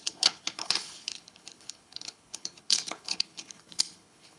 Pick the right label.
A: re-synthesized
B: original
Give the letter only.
A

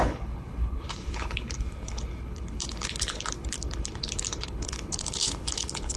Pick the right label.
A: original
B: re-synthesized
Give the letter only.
B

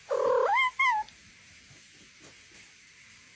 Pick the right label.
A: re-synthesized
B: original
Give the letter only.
B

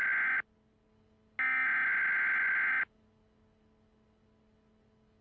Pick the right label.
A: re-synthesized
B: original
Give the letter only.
B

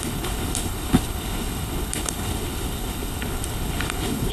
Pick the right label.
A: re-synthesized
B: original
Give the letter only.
A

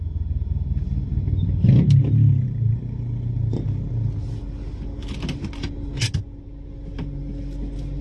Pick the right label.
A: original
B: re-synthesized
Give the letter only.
A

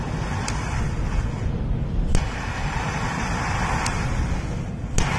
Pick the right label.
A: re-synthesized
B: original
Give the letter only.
B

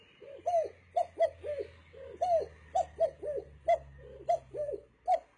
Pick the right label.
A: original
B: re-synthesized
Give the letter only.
A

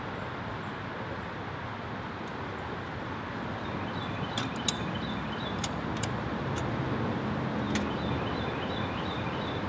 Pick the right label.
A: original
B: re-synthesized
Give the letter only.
A